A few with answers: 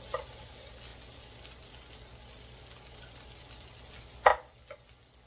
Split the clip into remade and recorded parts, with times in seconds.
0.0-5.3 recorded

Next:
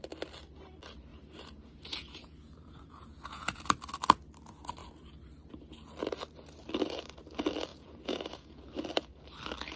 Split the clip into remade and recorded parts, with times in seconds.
0.0-1.1 recorded; 1.1-3.6 remade; 3.6-7.7 recorded; 7.7-8.6 remade; 8.6-9.8 recorded